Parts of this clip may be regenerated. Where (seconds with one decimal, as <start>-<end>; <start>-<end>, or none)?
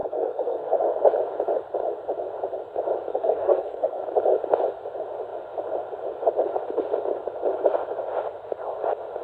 0.0-0.8; 3.1-4.0